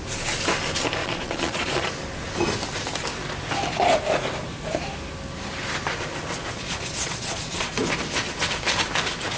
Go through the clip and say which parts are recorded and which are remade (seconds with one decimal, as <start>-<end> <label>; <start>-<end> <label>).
0.0-1.0 recorded; 1.0-1.9 remade; 1.9-6.4 recorded; 6.4-7.7 remade; 7.7-9.4 recorded